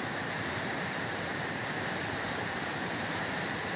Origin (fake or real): fake